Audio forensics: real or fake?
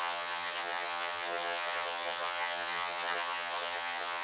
fake